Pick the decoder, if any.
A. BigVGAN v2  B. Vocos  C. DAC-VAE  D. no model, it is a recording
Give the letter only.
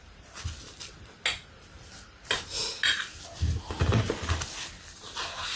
D